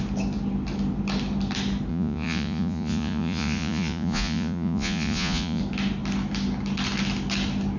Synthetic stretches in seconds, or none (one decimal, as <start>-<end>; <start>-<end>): 1.9-5.6